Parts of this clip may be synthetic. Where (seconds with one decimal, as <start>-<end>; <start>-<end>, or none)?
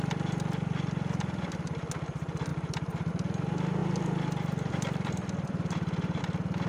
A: 2.5-3.1; 3.8-6.2